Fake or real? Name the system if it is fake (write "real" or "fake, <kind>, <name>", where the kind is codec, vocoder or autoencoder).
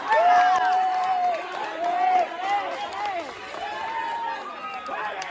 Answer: real